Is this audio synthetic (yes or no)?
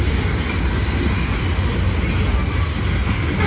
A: no